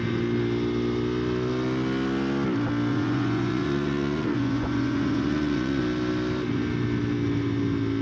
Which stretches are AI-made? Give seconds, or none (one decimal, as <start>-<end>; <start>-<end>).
2.9-5.8

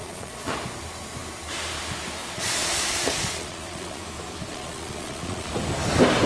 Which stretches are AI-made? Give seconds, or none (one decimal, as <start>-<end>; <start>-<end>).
0.0-0.5; 2.2-4.0; 4.5-5.5

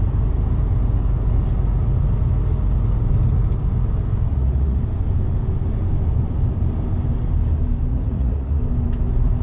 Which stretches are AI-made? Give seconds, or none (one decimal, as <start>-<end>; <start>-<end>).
4.3-4.8; 7.9-8.6

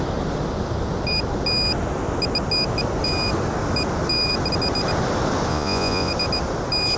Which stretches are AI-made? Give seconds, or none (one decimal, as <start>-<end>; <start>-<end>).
5.5-6.1